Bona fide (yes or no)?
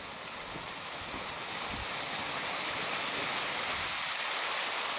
yes